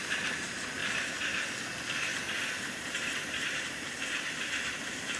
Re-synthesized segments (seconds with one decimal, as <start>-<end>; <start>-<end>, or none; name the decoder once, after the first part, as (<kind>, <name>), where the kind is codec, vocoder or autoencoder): 0.0-0.8 (vocoder, BigVGAN v2); 2.6-5.2